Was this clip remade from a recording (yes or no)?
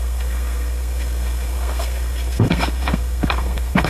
yes